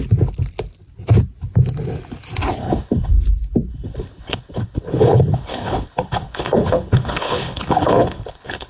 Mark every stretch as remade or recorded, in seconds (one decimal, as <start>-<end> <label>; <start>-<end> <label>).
0.0-2.6 recorded; 2.6-3.1 remade; 3.1-3.7 recorded; 3.7-8.7 remade